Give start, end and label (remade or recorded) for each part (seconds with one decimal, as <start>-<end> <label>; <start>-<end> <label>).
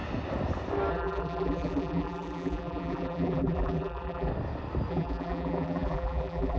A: 0.0-0.9 recorded; 0.9-4.3 remade; 4.3-4.9 recorded; 4.9-6.6 remade